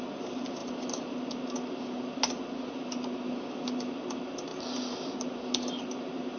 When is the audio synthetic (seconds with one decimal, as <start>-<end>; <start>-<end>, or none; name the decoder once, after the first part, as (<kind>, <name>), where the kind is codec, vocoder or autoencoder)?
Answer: none